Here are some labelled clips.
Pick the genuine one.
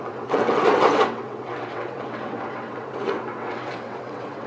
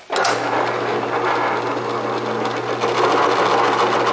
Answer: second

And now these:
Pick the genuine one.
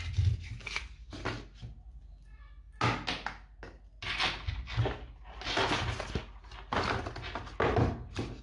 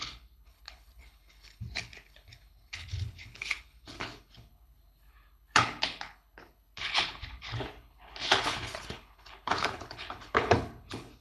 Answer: first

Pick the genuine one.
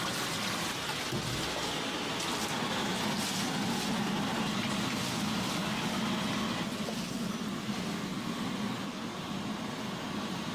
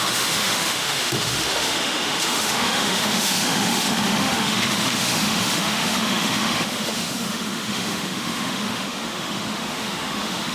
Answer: first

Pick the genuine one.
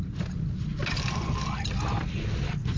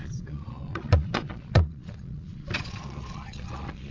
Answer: first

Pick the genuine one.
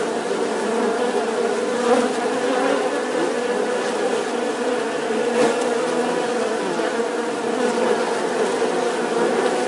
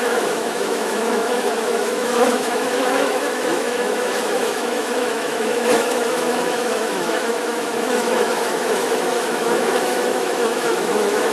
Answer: first